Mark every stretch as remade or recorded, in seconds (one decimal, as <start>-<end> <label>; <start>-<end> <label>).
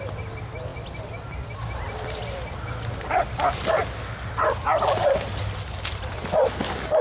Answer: 0.0-7.0 recorded